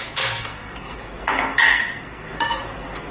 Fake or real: fake